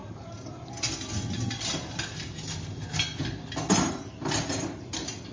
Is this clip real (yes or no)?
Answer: yes